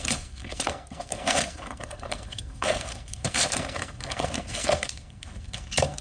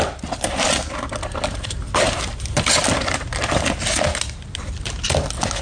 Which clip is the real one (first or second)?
second